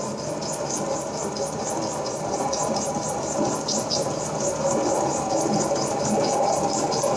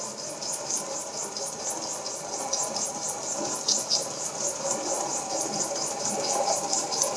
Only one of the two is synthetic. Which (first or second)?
second